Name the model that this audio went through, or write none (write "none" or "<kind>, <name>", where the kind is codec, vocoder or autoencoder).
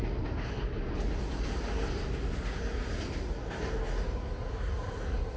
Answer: none